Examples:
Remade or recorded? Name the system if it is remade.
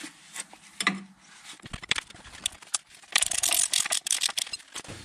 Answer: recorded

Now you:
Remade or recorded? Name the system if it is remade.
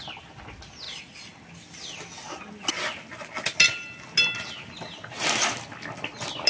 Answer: recorded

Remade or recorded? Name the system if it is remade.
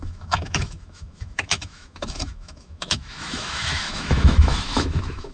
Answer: remade, autoencoder, DAC-VAE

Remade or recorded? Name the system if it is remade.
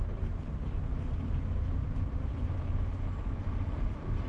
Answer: recorded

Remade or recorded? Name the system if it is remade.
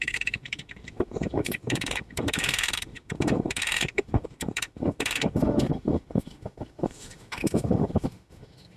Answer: remade, autoencoder, DAC-VAE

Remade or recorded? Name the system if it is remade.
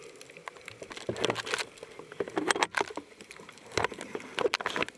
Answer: recorded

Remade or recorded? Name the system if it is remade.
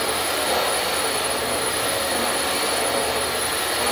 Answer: recorded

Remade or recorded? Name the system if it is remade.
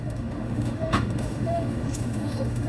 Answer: remade, autoencoder, DAC-VAE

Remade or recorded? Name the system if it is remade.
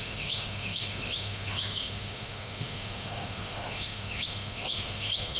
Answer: remade, autoencoder, DAC-VAE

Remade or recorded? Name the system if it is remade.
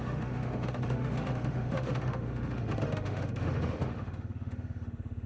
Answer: remade, autoencoder, DAC-VAE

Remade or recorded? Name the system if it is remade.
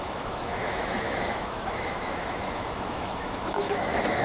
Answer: remade, autoencoder, DAC-VAE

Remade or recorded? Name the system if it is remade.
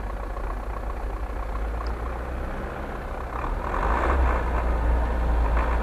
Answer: recorded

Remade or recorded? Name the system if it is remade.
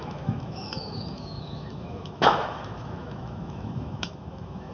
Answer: remade, autoencoder, DAC-VAE